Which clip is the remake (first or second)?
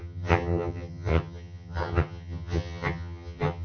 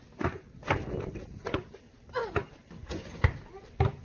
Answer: first